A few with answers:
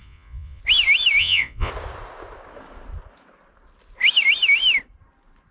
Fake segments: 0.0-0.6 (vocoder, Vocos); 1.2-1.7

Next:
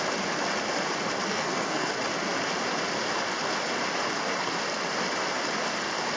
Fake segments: 1.3-1.9 (codec, SNAC)

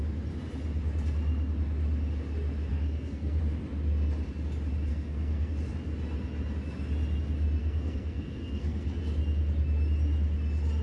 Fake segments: 2.7-3.4 (codec, SNAC); 4.9-5.5; 7.6-9.0

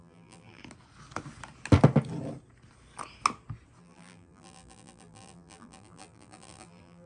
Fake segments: 0.0-0.6 (vocoder, BigVGAN v2); 3.8-7.1

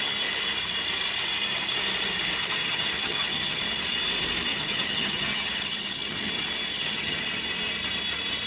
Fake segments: 2.4-3.6 (vocoder, HiFi-GAN); 4.5-6.3; 6.7-7.2

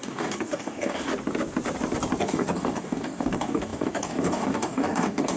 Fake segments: 0.0-1.1 (codec, DAC); 2.2-5.4

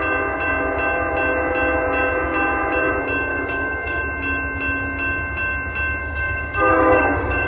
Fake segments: 3.3-4.0 (codec, DAC); 6.0-7.5